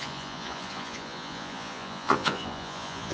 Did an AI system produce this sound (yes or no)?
yes